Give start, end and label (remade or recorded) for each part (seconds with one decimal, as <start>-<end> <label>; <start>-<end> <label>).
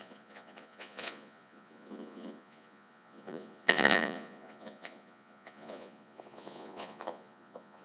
0.0-7.8 remade